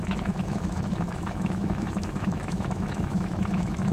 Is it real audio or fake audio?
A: fake